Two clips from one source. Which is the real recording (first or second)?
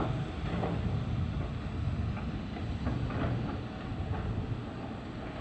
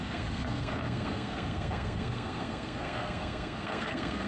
first